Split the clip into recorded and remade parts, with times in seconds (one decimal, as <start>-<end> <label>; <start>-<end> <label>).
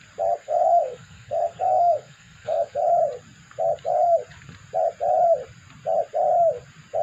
0.0-0.4 recorded; 0.4-2.8 remade; 2.8-7.0 recorded